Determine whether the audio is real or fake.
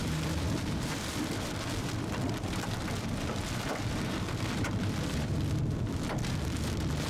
fake